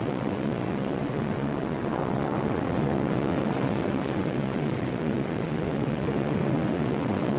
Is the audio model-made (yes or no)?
yes